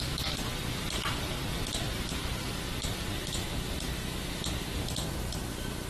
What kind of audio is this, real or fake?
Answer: fake